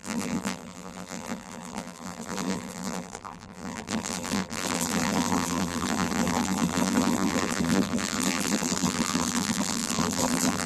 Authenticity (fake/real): fake